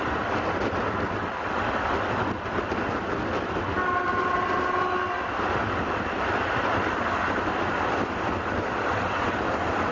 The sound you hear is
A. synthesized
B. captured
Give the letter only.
B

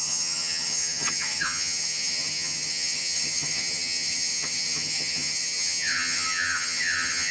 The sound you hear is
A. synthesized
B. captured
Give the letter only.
A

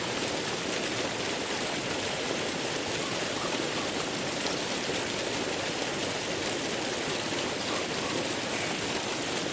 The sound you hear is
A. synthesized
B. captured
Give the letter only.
B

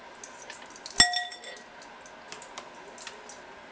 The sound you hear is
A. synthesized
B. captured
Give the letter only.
B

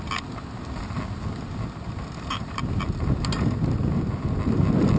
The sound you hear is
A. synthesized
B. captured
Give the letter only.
B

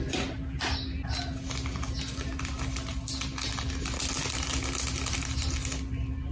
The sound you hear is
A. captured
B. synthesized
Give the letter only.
A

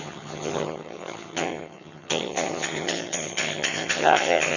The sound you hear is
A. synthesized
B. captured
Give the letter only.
A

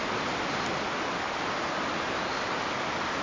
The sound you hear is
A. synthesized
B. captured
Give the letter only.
B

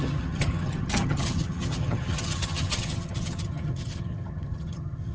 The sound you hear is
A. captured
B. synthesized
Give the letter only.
B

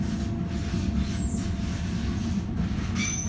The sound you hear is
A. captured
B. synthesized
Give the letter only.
A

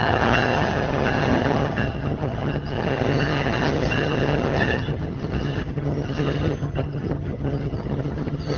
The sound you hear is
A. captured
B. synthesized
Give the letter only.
B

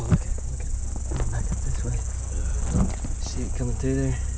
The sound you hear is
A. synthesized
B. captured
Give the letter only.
B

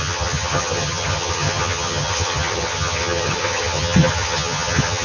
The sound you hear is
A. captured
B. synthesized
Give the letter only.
B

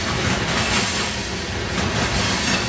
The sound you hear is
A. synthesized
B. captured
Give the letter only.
B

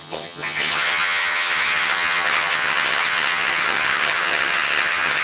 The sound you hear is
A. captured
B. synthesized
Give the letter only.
B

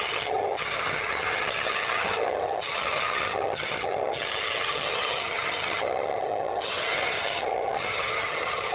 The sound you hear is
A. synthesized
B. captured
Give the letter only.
A